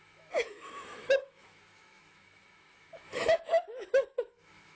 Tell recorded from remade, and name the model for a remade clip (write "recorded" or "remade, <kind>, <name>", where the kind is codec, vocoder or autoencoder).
remade, autoencoder, DAC-VAE